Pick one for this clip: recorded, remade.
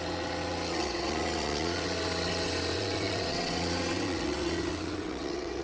remade